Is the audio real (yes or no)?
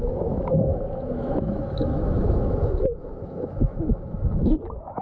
no